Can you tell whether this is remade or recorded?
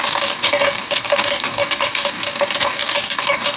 remade